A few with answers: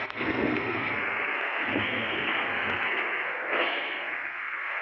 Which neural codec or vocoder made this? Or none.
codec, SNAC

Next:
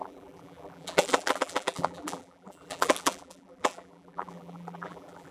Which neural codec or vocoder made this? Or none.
vocoder, BigVGAN v2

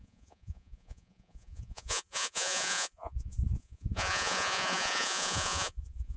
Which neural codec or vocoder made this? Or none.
vocoder, Vocos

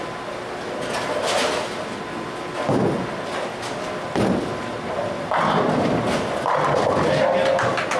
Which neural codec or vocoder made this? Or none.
none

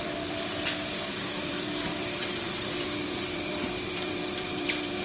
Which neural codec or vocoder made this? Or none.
vocoder, BigVGAN v2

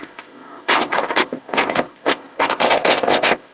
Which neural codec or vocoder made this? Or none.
codec, ZipCodec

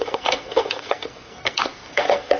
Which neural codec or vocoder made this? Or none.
codec, SNAC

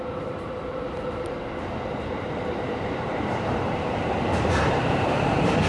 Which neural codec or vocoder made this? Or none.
vocoder, BigVGAN v2